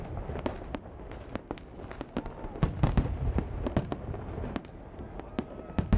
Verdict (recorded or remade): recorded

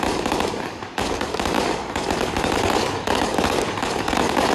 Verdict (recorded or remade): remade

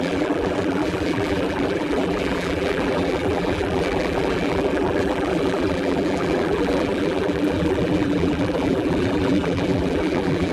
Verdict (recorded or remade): remade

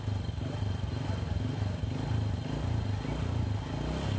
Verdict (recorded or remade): recorded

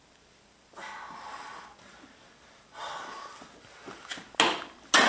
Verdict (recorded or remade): recorded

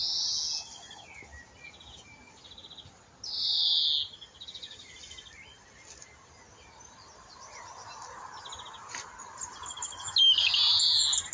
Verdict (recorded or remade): recorded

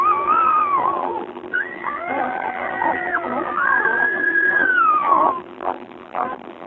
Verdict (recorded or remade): remade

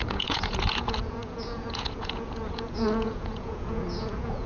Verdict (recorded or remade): remade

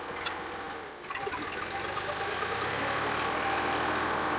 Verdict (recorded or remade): recorded